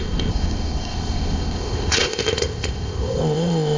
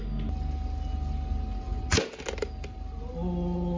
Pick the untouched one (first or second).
second